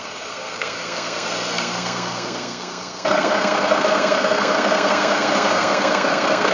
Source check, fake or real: fake